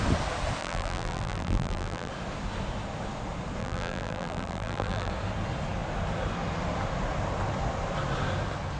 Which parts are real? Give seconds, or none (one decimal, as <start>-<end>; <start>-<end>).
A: 0.0-0.6; 2.1-3.6; 5.1-8.8